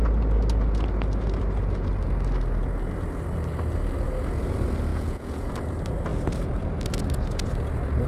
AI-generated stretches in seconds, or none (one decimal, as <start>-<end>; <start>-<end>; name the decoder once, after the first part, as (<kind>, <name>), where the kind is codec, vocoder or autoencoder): 4.9-5.5 (vocoder, Vocos)